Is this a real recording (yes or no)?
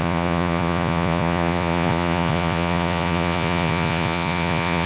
no